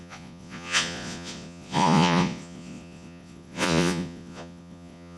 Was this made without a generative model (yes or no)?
no